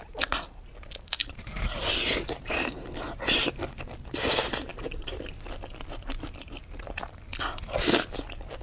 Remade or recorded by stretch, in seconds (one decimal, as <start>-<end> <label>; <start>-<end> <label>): 0.0-1.2 recorded; 1.2-4.0 remade; 4.0-4.7 recorded; 4.7-5.2 remade; 5.2-8.6 recorded